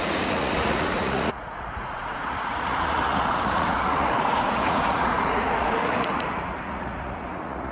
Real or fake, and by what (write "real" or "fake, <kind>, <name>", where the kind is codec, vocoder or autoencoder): fake, vocoder, Vocos